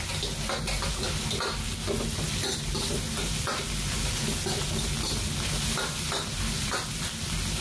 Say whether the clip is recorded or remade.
recorded